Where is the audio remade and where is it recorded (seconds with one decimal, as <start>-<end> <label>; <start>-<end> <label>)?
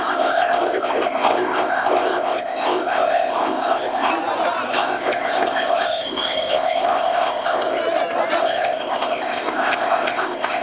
0.0-4.1 remade; 4.1-4.7 recorded; 4.7-7.8 remade; 7.8-8.4 recorded; 8.4-10.6 remade